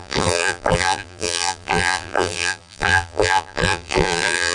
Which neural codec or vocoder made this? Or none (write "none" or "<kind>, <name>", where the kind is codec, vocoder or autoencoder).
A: vocoder, BigVGAN v2